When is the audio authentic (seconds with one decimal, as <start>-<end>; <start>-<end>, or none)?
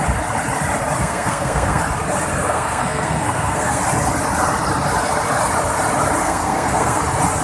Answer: 0.0-1.0; 1.8-2.4; 3.8-6.2; 7.0-7.4